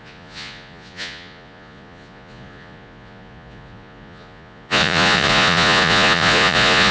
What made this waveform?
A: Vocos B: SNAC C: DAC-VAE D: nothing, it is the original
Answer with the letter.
A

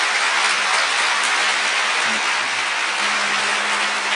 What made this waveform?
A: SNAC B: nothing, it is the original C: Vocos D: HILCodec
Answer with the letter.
B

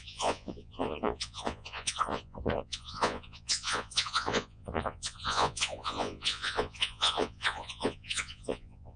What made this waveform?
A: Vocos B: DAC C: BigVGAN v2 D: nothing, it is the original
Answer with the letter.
A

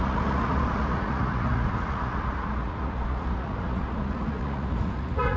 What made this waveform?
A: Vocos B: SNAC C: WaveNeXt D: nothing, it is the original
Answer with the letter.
A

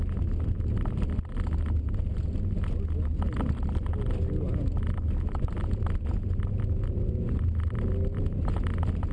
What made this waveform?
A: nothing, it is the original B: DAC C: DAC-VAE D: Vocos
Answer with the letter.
A